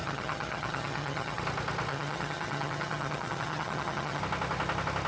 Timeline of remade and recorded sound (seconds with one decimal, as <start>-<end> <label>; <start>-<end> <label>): 0.0-1.4 remade; 1.4-1.9 recorded; 1.9-4.2 remade; 4.2-5.1 recorded